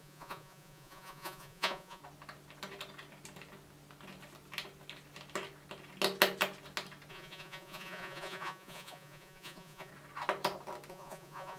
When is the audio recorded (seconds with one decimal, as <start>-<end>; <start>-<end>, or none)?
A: 2.0-7.1; 9.9-10.9